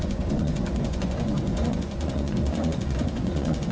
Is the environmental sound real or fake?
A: fake